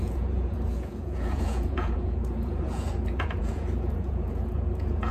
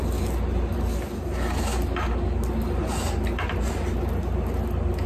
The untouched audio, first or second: second